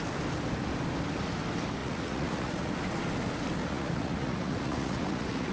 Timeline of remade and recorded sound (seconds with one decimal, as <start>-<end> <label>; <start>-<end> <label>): 0.0-1.8 recorded; 1.8-2.7 remade; 2.7-3.6 recorded; 3.6-5.5 remade